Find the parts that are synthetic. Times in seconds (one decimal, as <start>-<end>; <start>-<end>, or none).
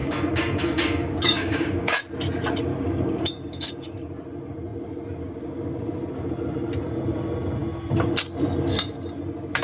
0.0-2.0; 2.7-3.7